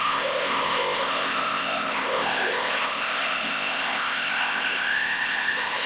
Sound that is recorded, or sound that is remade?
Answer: remade